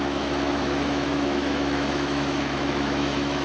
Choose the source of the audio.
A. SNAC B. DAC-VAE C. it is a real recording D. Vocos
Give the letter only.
B